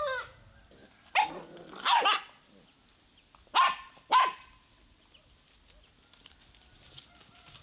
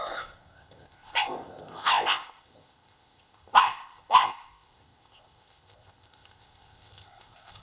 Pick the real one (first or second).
first